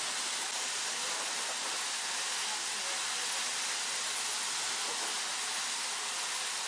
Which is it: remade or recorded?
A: recorded